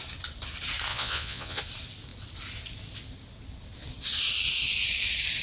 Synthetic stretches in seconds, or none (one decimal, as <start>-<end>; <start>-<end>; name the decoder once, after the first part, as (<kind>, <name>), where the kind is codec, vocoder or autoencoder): 0.9-1.6 (vocoder, Vocos)